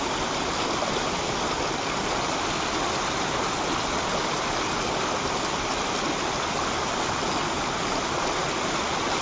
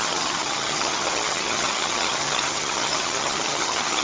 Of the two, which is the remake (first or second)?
second